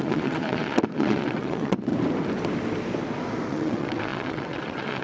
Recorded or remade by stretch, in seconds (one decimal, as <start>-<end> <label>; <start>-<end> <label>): 0.0-1.9 remade; 1.9-3.5 recorded; 3.5-5.0 remade